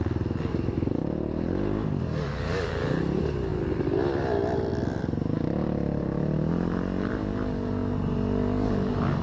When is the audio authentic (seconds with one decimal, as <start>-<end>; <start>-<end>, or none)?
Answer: 0.0-2.0; 2.7-9.2